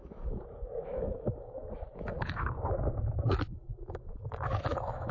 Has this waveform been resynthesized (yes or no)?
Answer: yes